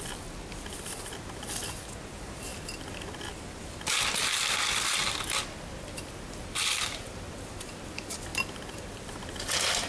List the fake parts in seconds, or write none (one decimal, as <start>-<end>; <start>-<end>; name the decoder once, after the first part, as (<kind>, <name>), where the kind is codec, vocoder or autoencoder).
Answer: none